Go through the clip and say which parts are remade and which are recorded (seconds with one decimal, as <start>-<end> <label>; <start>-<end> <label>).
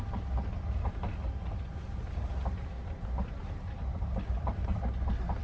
0.0-5.4 recorded